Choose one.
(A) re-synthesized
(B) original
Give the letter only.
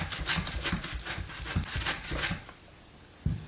B